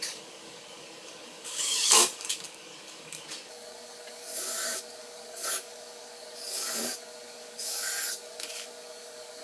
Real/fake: fake